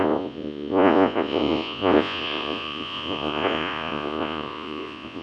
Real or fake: fake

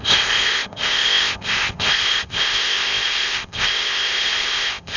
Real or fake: fake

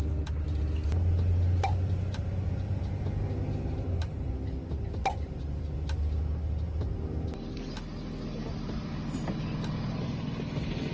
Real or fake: real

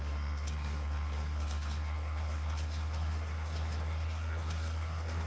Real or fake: fake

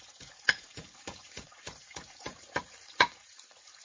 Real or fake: fake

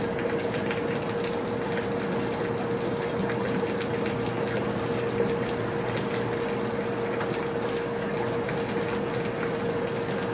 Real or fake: real